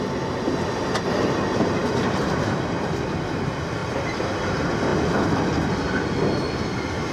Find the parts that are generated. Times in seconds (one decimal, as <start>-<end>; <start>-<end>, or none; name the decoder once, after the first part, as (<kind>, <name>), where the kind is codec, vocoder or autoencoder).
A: none